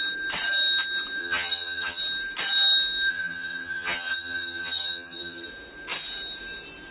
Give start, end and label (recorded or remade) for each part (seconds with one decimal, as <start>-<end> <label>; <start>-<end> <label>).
0.0-1.2 recorded; 1.2-2.0 remade; 2.0-3.1 recorded; 3.1-5.5 remade; 5.5-6.9 recorded